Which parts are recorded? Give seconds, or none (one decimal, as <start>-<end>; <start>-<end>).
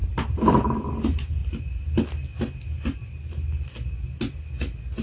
0.6-5.0